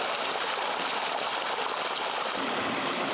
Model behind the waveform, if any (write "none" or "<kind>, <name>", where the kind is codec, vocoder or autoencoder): none